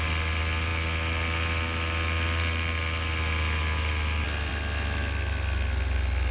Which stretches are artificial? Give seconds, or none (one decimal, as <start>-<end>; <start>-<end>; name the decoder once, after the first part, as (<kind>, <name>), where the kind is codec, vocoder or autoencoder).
none